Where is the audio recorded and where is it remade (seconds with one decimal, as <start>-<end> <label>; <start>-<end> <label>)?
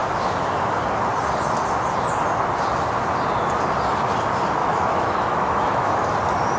0.0-0.8 remade; 0.8-4.6 recorded; 4.6-5.9 remade; 5.9-6.6 recorded